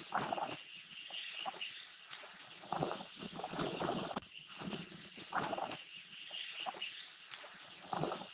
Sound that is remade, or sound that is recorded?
remade